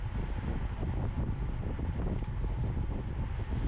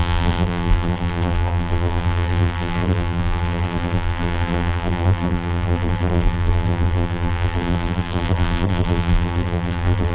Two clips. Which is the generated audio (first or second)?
second